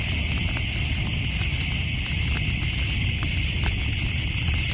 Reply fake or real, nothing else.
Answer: real